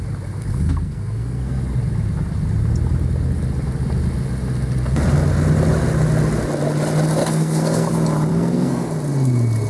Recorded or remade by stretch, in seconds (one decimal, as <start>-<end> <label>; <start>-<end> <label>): 0.0-0.5 recorded; 0.5-1.6 remade; 1.6-7.2 recorded; 7.2-7.9 remade; 7.9-8.3 recorded; 8.3-8.9 remade; 8.9-9.7 recorded